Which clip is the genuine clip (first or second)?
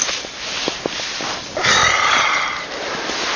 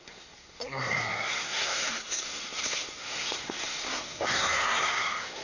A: first